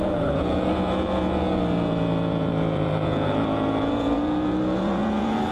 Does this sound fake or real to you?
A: fake